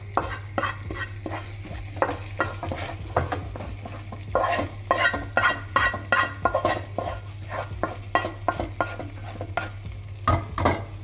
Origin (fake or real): real